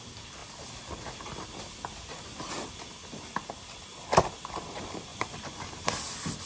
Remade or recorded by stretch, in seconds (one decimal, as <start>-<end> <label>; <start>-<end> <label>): 0.0-5.1 recorded; 5.1-5.6 remade; 5.6-6.5 recorded